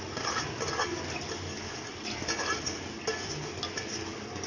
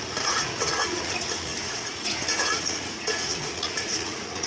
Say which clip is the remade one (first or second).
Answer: second